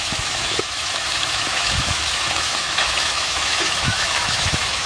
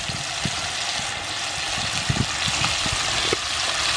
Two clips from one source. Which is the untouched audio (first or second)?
second